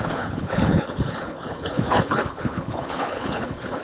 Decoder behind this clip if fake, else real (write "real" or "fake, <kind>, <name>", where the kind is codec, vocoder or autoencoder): fake, codec, HILCodec